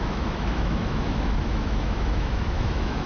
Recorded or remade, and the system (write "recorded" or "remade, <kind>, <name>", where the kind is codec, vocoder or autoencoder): remade, autoencoder, DAC-VAE